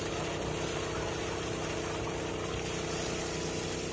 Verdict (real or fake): real